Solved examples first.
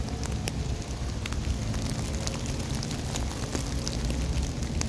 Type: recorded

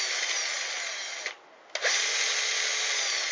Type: recorded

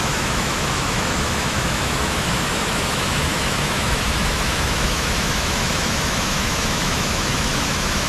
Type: remade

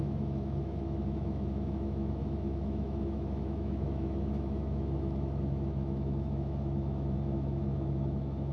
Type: remade